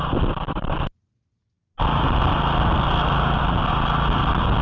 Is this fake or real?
real